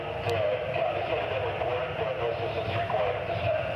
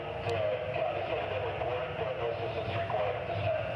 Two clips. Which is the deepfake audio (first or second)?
first